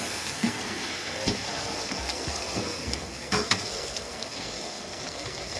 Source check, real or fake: fake